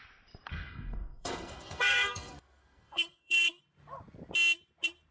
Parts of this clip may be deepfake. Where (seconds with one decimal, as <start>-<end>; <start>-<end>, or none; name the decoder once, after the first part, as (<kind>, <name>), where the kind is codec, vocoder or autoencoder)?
0.5-3.6 (codec, SNAC)